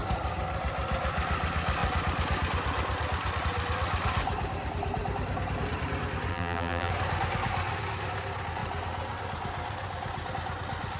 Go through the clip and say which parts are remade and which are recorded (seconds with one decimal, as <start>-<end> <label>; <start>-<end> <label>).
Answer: 0.0-6.3 recorded; 6.3-6.9 remade; 6.9-11.0 recorded